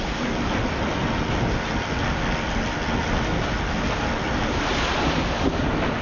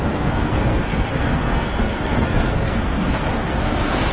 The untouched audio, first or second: first